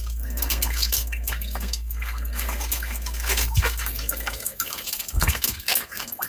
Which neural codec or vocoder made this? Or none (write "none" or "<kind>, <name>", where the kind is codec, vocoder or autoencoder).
codec, SNAC